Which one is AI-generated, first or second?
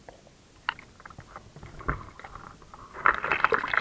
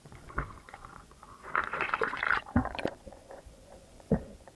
second